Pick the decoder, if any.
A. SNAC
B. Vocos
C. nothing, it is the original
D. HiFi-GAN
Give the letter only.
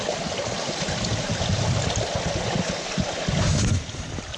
C